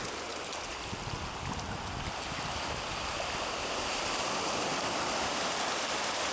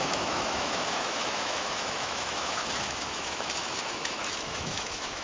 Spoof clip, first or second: second